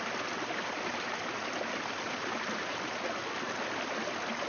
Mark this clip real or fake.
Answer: real